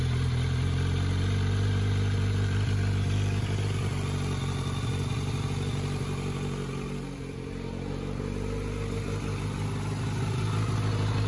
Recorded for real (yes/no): yes